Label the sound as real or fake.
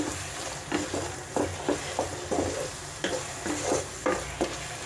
real